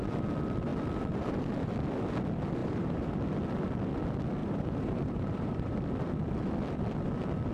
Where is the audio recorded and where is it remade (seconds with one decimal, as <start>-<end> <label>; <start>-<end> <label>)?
0.0-2.6 recorded; 2.6-3.2 remade; 3.2-4.4 recorded; 4.4-5.9 remade; 5.9-7.5 recorded